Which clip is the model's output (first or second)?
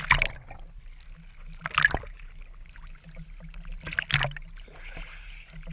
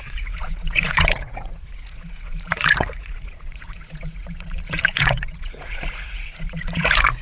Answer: second